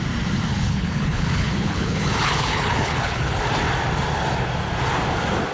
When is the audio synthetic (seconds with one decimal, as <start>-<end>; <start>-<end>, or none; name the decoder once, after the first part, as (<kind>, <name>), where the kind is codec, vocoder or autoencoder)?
0.5-3.4 (codec, HILCodec)